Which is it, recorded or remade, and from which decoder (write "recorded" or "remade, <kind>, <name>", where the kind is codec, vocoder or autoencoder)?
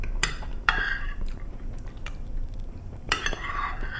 remade, vocoder, BigVGAN v2